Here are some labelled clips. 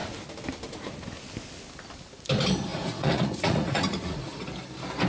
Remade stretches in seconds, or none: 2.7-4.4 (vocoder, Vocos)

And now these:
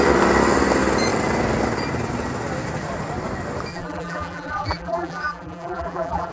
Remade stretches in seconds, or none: 3.7-6.3 (vocoder, BigVGAN v2)

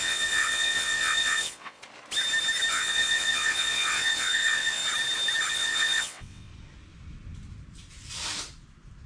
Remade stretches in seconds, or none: 0.0-1.8 (vocoder, WaveNeXt); 2.7-4.8; 5.5-6.5

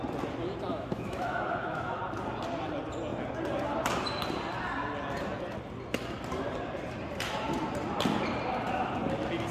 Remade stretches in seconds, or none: 0.7-2.0 (autoencoder, DAC-VAE)

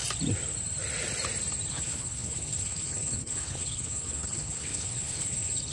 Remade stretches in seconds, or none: 1.7-5.7 (codec, HILCodec)